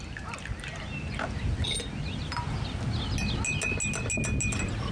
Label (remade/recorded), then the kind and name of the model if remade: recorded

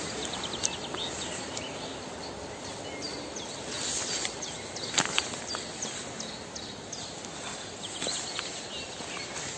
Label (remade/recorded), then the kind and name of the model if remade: recorded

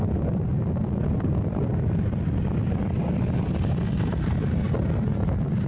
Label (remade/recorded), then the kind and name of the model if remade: recorded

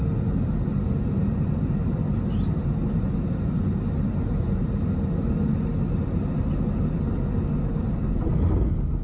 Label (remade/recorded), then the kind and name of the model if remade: recorded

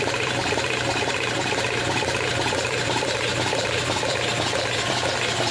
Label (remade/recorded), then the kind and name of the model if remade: remade, vocoder, BigVGAN v2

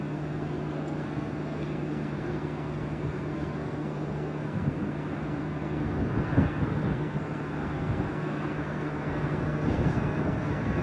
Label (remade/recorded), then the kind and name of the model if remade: remade, codec, SNAC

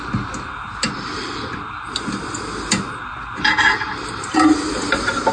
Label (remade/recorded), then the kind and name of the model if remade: recorded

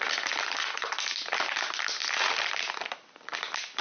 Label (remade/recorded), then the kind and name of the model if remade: recorded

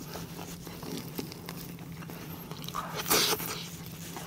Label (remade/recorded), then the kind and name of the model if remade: recorded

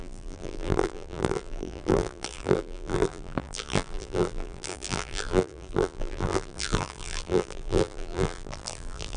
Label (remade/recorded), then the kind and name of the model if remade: remade, vocoder, BigVGAN v2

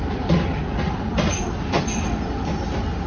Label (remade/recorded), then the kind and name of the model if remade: recorded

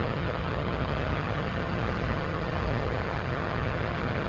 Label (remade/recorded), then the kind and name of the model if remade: remade, vocoder, HiFi-GAN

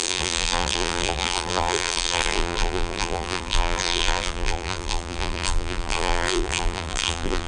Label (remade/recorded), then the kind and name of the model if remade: remade, vocoder, BigVGAN v2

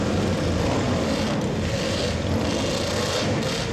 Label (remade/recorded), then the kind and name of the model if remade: recorded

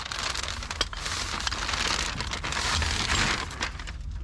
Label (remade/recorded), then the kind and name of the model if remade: recorded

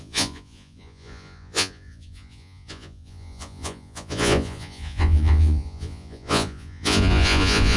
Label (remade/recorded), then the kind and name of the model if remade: remade, vocoder, Vocos